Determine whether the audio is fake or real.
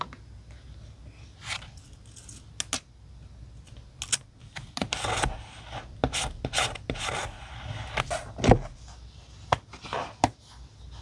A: real